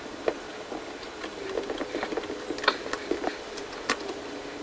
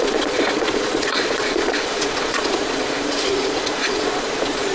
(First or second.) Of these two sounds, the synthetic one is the second